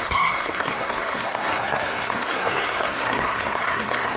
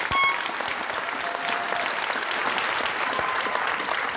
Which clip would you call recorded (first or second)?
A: second